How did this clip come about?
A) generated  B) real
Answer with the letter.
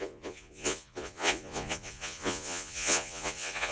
A